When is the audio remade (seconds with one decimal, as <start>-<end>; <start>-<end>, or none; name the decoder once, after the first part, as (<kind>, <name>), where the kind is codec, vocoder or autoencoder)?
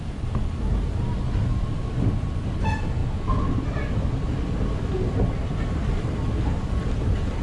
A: none